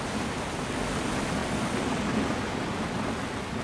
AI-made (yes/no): no